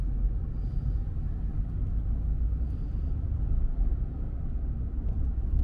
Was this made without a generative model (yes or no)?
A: yes